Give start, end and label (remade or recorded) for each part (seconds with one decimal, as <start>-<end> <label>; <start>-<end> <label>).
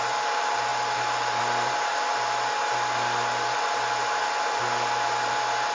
0.0-5.7 recorded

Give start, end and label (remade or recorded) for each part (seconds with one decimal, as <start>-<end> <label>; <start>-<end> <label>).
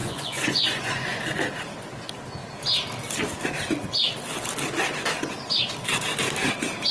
0.0-1.2 remade; 1.2-6.9 recorded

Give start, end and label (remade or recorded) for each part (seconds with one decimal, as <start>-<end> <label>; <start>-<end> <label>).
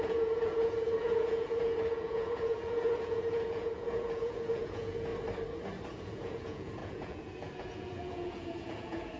0.0-5.1 remade; 5.1-5.9 recorded; 5.9-9.2 remade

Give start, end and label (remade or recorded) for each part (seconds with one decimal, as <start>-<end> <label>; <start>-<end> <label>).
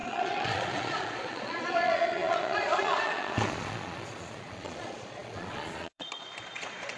0.0-7.0 remade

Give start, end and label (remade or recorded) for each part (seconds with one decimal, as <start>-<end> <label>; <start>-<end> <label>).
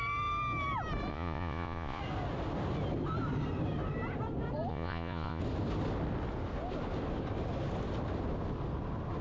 0.0-1.1 recorded; 1.1-2.0 remade; 2.0-4.7 recorded; 4.7-5.4 remade; 5.4-9.2 recorded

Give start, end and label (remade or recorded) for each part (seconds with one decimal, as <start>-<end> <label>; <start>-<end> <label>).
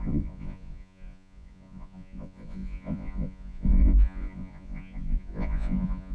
0.0-6.1 remade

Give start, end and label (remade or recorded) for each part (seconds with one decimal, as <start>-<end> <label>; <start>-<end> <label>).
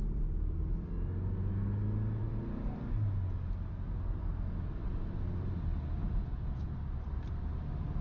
0.0-6.0 recorded; 6.0-6.7 remade; 6.7-8.0 recorded